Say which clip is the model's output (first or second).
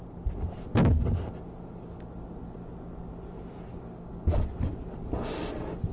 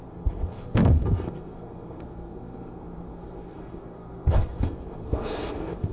second